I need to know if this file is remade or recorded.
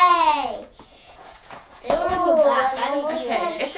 remade